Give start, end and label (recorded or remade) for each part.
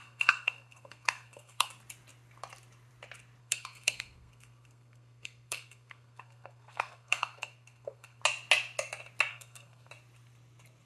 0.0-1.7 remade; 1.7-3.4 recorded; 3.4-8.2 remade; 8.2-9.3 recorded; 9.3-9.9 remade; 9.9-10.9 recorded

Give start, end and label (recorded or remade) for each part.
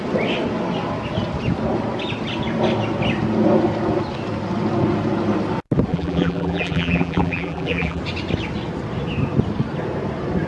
0.0-5.9 recorded; 5.9-8.0 remade; 8.0-10.5 recorded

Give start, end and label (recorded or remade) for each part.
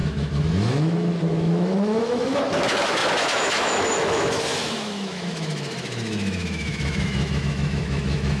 0.0-8.4 remade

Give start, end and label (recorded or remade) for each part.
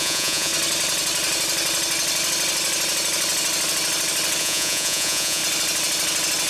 0.0-0.5 remade; 0.5-4.4 recorded; 4.4-5.4 remade; 5.4-6.5 recorded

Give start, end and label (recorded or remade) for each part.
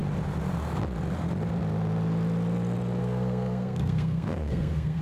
0.0-3.0 recorded; 3.0-5.0 remade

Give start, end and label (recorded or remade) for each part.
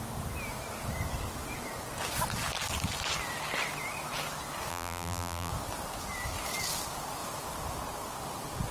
0.0-4.7 recorded; 4.7-5.5 remade; 5.5-8.7 recorded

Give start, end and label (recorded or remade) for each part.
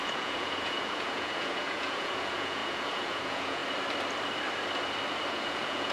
0.0-3.6 remade; 3.6-5.3 recorded; 5.3-5.9 remade